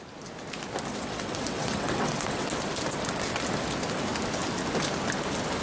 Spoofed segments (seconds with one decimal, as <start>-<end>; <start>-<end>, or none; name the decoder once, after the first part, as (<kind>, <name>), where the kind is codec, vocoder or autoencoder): 0.9-2.5 (vocoder, WaveNeXt)